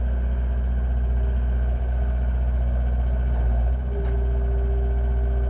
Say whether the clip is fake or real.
real